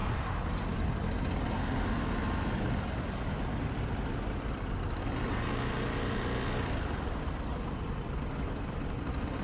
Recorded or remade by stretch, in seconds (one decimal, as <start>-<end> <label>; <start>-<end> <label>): 0.0-9.4 recorded